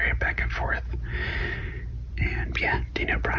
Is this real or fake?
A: real